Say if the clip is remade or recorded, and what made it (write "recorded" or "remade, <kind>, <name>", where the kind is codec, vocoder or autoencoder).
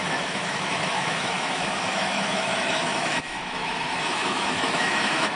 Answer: remade, autoencoder, DAC-VAE